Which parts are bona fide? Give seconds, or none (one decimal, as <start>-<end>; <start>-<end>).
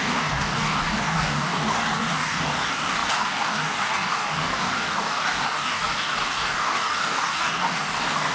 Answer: none